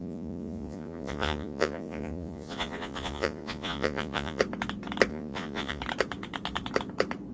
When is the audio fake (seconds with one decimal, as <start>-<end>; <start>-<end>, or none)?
0.0-4.4; 5.1-5.8

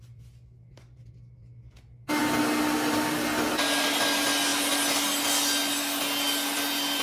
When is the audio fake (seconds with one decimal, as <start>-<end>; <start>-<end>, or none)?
none